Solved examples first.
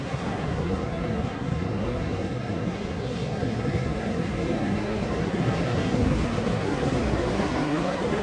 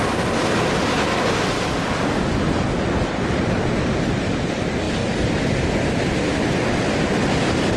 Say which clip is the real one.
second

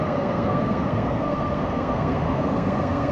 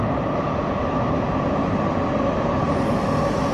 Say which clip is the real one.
second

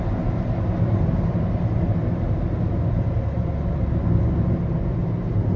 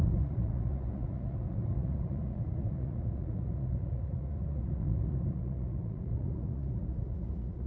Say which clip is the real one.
first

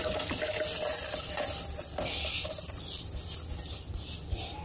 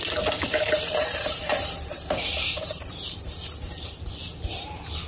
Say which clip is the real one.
first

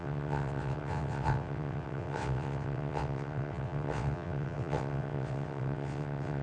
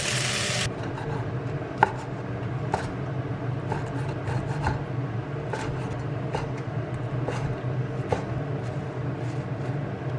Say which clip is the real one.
second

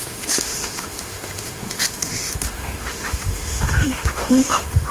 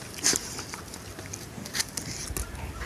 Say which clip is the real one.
second